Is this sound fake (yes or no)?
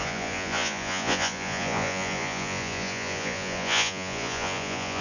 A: yes